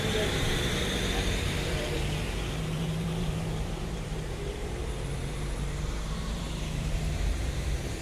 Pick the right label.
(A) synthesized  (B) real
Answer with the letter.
A